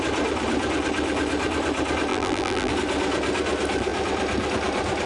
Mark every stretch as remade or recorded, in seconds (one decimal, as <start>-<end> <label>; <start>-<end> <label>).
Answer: 0.0-2.1 recorded; 2.1-2.7 remade; 2.7-5.1 recorded